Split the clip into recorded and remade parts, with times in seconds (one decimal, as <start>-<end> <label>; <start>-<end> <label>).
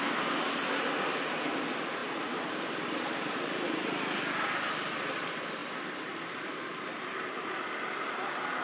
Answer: 0.0-2.0 recorded; 2.0-4.2 remade; 4.2-5.6 recorded; 5.6-8.1 remade; 8.1-8.6 recorded